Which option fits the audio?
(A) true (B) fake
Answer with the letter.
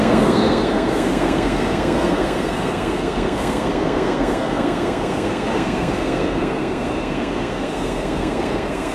B